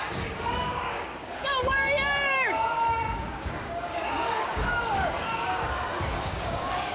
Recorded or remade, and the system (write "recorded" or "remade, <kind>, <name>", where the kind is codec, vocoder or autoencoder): remade, codec, DAC